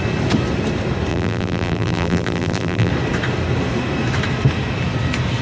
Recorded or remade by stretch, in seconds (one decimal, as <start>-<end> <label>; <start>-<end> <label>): 0.0-1.1 recorded; 1.1-2.9 remade; 2.9-5.4 recorded